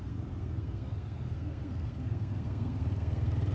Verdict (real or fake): fake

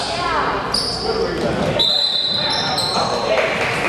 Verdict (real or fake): fake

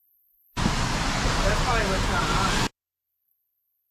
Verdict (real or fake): real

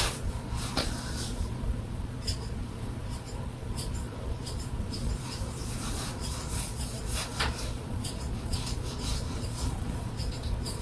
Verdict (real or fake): fake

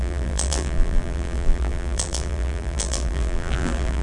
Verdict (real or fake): fake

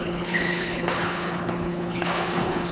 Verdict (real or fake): fake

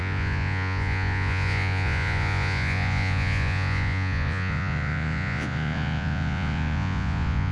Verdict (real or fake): fake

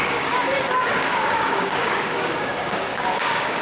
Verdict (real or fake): fake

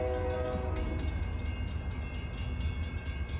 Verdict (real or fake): real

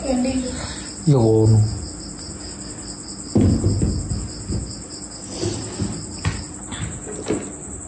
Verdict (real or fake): real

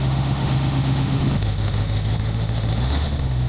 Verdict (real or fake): fake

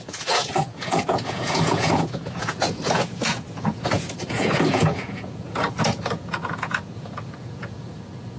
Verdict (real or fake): fake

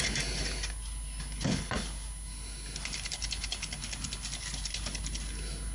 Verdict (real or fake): real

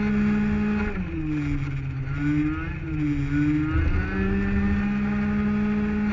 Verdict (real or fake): real